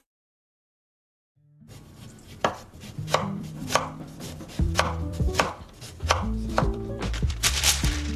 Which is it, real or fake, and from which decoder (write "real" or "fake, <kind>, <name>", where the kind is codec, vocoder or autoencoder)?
fake, vocoder, BigVGAN v2